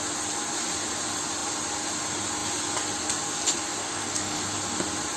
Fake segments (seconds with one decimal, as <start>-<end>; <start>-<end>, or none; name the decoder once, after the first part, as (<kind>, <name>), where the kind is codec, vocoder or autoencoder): 3.8-4.4 (codec, SNAC)